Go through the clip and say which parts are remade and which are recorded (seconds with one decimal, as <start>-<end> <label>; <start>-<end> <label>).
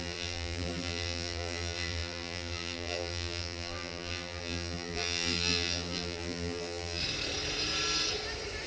0.0-7.0 remade; 7.0-8.7 recorded